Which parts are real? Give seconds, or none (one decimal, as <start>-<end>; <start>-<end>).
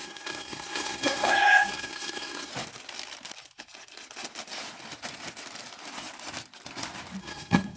2.5-7.2